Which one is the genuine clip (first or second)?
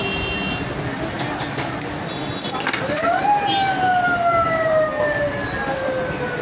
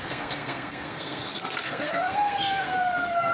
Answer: first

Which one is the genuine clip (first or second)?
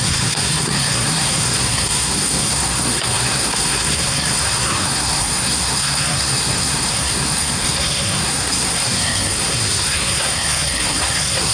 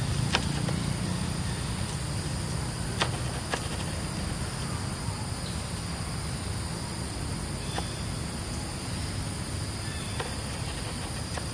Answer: second